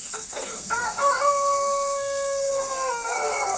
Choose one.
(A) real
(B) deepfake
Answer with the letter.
B